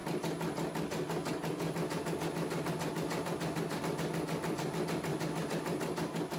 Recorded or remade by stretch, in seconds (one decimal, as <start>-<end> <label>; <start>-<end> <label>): 0.0-6.4 recorded